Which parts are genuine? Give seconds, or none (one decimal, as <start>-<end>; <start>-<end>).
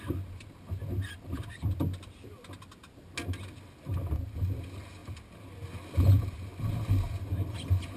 0.0-8.0